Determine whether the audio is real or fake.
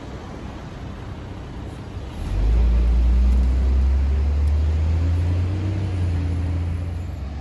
real